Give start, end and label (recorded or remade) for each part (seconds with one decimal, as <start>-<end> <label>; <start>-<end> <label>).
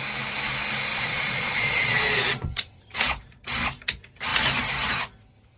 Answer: 0.0-0.9 recorded; 0.9-2.8 remade; 2.8-5.6 recorded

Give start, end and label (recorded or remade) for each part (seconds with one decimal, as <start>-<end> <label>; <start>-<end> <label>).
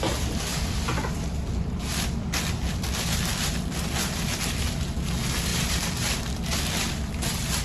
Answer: 0.0-0.5 recorded; 0.5-4.4 remade; 4.4-5.5 recorded; 5.5-6.2 remade; 6.2-7.6 recorded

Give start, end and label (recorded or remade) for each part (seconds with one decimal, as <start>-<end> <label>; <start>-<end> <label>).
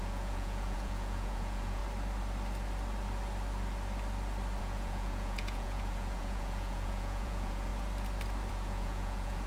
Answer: 0.0-1.8 remade; 1.8-4.6 recorded; 4.6-7.7 remade; 7.7-8.5 recorded; 8.5-9.5 remade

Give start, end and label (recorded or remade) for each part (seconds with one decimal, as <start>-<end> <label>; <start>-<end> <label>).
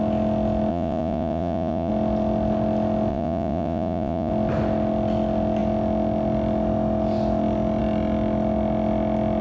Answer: 0.0-0.7 recorded; 0.7-1.9 remade; 1.9-3.1 recorded; 3.1-4.3 remade; 4.3-9.4 recorded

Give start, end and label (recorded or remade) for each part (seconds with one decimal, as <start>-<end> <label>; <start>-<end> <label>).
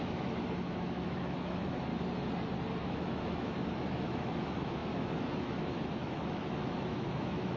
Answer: 0.0-1.9 remade; 1.9-2.8 recorded; 2.8-7.6 remade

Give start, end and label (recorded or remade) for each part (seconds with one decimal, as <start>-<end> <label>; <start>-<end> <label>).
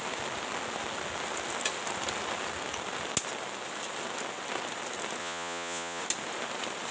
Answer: 0.0-5.2 recorded; 5.2-6.0 remade; 6.0-6.9 recorded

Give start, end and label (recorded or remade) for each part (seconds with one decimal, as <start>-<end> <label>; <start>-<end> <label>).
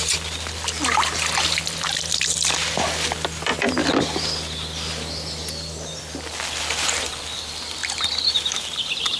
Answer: 0.0-3.8 remade; 3.8-6.0 recorded; 6.0-7.8 remade; 7.8-8.3 recorded; 8.3-9.2 remade